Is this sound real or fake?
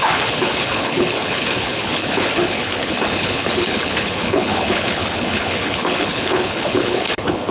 fake